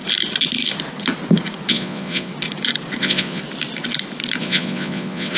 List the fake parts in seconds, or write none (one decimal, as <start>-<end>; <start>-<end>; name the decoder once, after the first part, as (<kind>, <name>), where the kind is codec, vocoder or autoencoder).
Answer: 1.7-2.3 (vocoder, Vocos); 3.0-3.4; 4.4-5.4